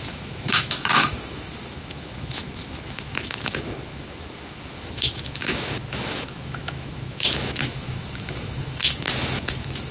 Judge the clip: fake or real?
fake